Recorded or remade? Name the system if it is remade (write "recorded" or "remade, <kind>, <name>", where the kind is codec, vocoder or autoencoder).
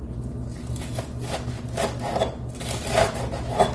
recorded